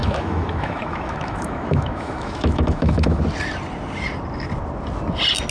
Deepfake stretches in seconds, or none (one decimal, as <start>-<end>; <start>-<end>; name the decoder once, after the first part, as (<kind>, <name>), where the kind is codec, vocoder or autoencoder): 0.0-3.2 (autoencoder, DAC-VAE)